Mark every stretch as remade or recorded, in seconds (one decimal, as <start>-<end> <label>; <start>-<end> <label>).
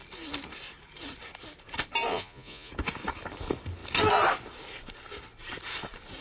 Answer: 0.0-2.1 recorded; 2.1-2.7 remade; 2.7-6.2 recorded